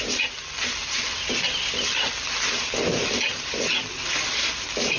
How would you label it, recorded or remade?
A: recorded